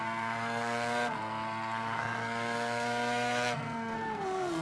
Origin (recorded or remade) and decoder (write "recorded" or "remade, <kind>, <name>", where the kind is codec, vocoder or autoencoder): remade, codec, SNAC